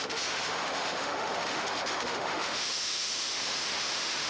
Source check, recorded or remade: remade